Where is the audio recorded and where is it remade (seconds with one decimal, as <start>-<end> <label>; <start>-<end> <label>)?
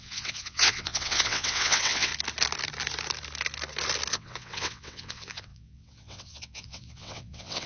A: 0.0-2.1 remade; 2.1-4.1 recorded; 4.1-7.7 remade